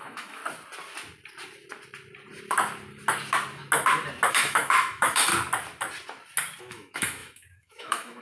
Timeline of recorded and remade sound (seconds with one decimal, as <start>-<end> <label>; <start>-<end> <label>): 0.0-0.4 remade; 0.4-4.3 recorded; 4.3-5.3 remade; 5.3-6.6 recorded; 6.6-8.2 remade